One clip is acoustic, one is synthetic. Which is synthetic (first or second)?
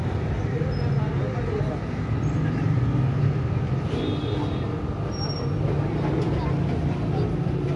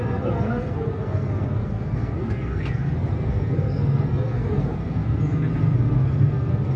second